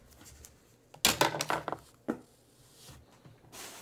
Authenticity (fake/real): real